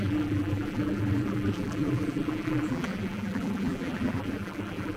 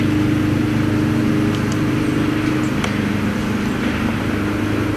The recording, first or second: second